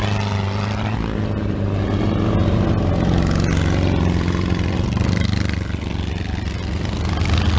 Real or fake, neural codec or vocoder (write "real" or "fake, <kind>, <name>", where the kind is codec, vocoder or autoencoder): real